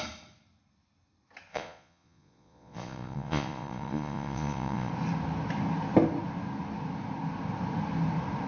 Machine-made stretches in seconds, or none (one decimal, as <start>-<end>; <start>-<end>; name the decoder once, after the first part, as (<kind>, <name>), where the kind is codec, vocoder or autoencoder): 1.5-4.9 (vocoder, Vocos)